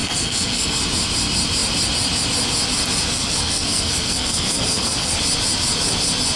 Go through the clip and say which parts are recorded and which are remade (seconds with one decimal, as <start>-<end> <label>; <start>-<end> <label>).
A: 0.0-0.8 remade; 0.8-3.1 recorded; 3.1-5.2 remade; 5.2-6.4 recorded